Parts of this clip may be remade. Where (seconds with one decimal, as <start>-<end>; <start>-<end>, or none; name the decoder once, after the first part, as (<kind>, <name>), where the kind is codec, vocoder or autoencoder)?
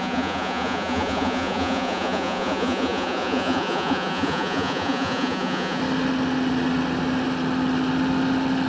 0.0-5.8 (vocoder, Vocos)